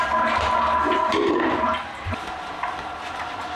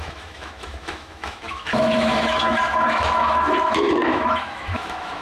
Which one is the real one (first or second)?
first